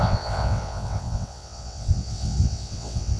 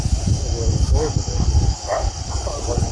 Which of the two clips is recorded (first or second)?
second